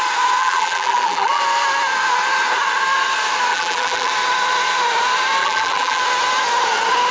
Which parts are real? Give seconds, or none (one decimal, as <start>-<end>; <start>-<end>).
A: 0.0-0.4; 1.4-3.5; 4.1-5.4; 6.0-7.1